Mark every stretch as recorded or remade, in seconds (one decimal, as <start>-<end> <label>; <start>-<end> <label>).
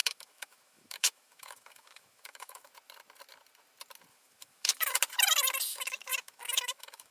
0.0-2.7 remade; 2.7-4.1 recorded; 4.1-5.0 remade; 5.0-5.7 recorded; 5.7-7.1 remade